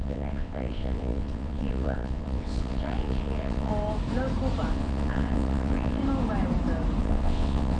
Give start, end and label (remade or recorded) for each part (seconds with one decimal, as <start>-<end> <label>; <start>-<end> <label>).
0.0-3.7 remade; 3.7-4.7 recorded; 4.7-6.0 remade; 6.0-7.0 recorded; 7.0-7.8 remade